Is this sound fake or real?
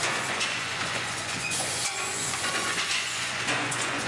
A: fake